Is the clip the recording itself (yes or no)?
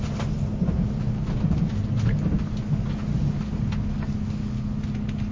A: yes